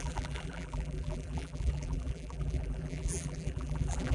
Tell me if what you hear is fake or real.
fake